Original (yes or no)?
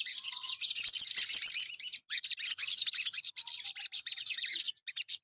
yes